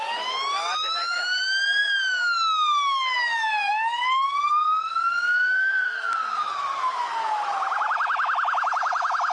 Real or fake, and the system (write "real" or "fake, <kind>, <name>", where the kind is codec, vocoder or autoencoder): fake, autoencoder, DAC-VAE